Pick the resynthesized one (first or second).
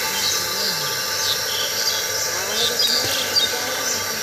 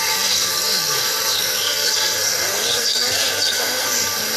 second